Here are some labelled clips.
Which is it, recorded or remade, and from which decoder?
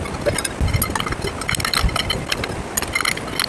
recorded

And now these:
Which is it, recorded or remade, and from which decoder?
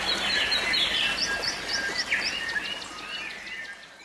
recorded